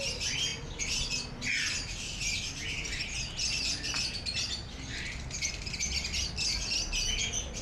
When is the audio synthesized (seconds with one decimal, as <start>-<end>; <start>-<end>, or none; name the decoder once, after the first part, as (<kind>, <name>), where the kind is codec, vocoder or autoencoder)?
none